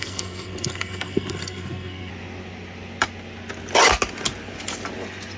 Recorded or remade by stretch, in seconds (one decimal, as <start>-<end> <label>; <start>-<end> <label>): 0.0-2.1 remade; 2.1-5.4 recorded